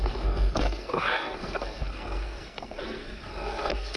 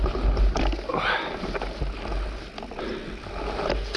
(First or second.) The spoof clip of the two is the first